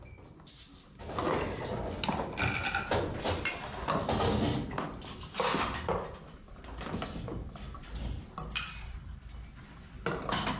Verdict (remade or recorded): recorded